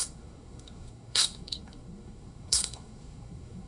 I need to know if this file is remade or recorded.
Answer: remade